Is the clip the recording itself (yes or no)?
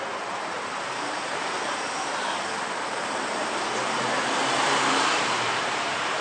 no